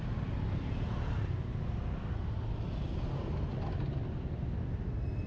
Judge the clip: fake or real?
real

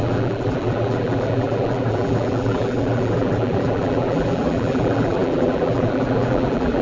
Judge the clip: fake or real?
fake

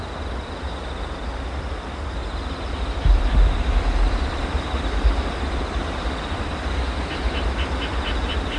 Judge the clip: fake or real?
fake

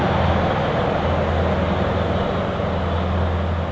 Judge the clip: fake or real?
real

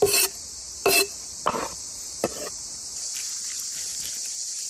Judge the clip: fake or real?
fake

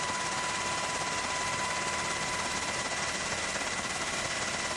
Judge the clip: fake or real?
real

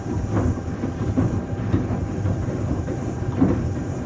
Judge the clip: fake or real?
fake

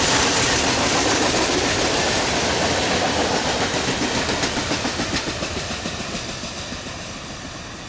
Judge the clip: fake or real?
fake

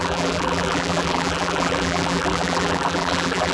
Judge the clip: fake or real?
fake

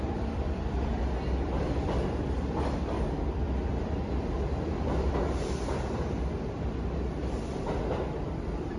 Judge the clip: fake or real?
fake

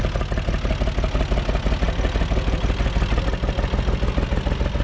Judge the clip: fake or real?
real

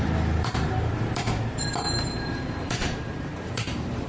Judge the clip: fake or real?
fake